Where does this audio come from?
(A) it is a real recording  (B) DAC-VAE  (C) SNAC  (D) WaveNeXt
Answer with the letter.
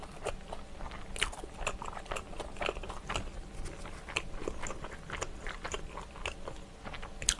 A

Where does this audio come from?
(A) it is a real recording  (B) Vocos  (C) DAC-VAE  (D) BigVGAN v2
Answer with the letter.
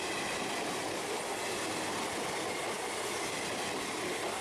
A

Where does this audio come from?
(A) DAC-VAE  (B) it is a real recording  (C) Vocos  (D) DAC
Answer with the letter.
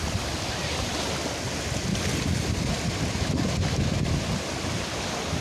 B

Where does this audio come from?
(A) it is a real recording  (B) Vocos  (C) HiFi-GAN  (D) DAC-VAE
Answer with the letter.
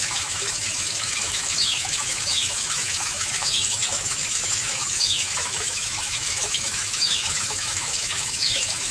D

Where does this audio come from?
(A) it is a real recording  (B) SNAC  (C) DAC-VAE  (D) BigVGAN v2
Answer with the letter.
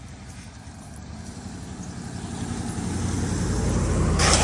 A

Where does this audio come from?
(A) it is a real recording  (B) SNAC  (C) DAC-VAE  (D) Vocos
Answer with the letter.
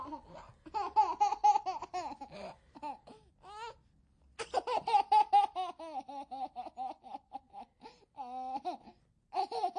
A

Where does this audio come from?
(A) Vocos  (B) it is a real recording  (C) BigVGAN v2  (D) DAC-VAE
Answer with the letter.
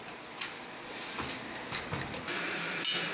B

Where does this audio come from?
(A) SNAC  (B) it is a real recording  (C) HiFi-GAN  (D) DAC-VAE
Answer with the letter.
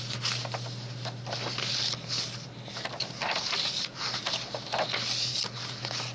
B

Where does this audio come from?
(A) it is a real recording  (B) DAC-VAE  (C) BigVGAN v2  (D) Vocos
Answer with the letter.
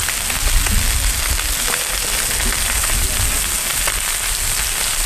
A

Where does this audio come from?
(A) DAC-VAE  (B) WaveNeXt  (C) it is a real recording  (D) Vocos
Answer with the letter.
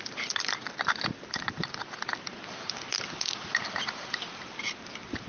C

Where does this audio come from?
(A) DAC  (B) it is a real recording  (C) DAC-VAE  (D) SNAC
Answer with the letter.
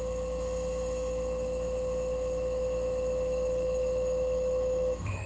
C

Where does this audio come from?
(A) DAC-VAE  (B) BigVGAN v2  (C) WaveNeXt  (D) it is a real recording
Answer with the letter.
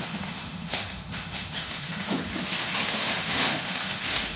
A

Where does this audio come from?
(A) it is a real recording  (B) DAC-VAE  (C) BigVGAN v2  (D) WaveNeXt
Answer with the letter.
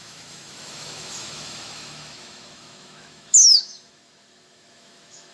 B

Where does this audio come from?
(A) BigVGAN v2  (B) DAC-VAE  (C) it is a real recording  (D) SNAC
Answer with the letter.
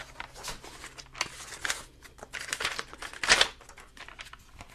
C